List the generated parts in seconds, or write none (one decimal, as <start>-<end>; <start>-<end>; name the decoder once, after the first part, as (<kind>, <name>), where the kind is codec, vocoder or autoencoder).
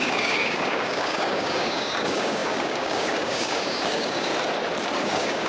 0.0-4.3 (codec, DAC); 5.0-5.5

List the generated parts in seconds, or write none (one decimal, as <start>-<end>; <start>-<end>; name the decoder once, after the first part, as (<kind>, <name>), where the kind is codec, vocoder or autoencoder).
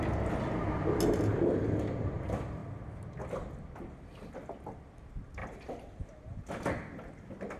5.4-6.0 (vocoder, BigVGAN v2)